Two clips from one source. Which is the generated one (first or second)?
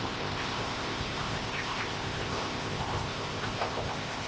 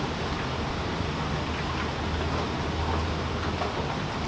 first